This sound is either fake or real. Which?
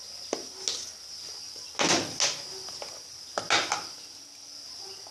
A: real